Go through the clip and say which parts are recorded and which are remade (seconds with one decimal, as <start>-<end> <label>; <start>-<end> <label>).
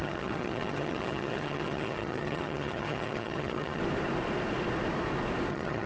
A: 0.0-3.8 remade; 3.8-5.5 recorded; 5.5-5.9 remade